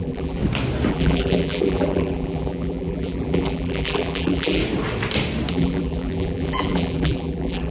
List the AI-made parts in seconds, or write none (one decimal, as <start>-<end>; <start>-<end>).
0.0-0.4; 0.9-4.6; 5.5-7.7